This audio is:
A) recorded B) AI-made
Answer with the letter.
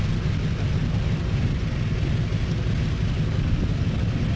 A